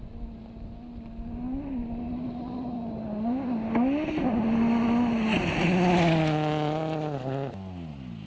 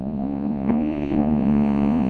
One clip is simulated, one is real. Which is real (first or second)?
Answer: first